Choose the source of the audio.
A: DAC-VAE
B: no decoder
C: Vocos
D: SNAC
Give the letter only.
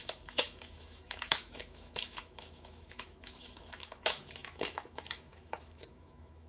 A